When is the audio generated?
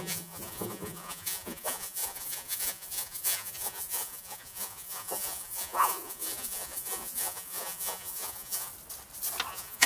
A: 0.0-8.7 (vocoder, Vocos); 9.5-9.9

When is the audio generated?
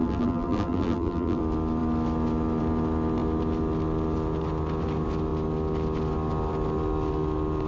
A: 0.0-1.4 (vocoder, BigVGAN v2)